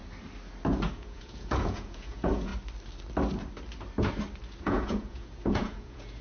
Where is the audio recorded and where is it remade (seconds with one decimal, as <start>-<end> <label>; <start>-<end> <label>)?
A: 0.0-0.9 recorded; 0.9-2.5 remade; 2.5-4.6 recorded; 4.6-6.2 remade